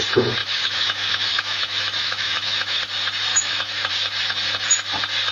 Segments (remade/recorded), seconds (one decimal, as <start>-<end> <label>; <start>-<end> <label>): 0.0-0.4 recorded; 0.4-2.8 remade; 2.8-3.3 recorded; 3.3-3.9 remade; 3.9-5.3 recorded